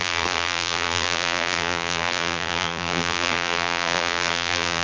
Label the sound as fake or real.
fake